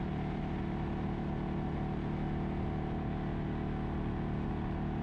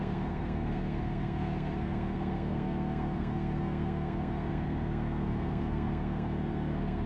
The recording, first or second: first